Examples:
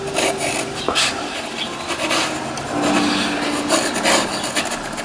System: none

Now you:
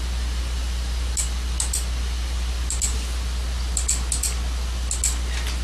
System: none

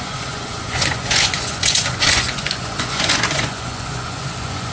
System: vocoder, Vocos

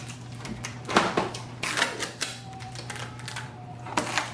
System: vocoder, BigVGAN v2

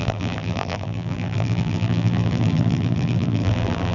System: vocoder, BigVGAN v2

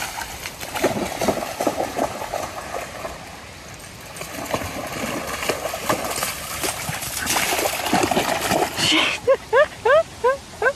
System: none